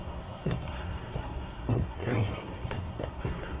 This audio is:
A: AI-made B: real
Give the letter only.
A